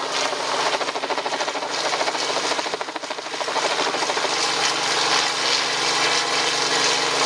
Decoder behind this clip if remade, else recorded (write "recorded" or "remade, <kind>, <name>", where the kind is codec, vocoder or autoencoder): recorded